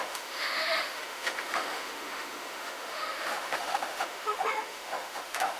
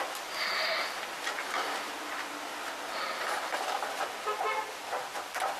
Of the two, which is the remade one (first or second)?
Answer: first